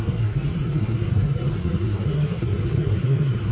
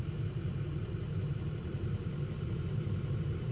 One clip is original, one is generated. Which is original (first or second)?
second